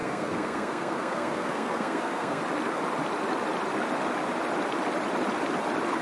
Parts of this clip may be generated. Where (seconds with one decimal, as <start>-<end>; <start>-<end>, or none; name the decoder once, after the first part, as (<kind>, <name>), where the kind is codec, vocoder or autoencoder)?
0.0-2.4 (codec, SNAC)